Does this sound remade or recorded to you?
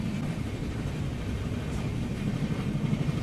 remade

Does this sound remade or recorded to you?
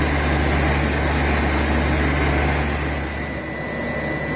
recorded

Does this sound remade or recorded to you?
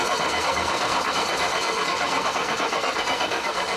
remade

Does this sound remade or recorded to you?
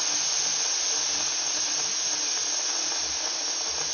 recorded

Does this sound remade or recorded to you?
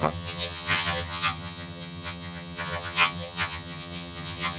remade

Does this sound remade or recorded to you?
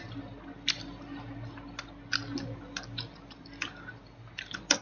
recorded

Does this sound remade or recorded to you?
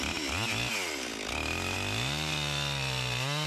recorded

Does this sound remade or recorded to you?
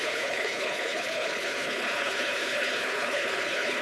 remade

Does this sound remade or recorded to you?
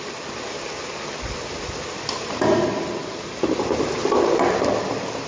recorded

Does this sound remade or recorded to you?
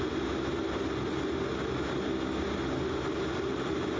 recorded